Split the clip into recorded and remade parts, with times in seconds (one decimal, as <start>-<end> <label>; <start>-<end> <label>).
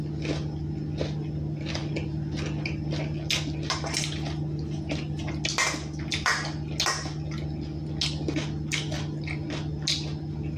0.0-10.6 recorded